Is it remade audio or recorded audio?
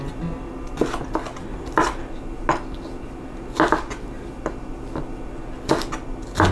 recorded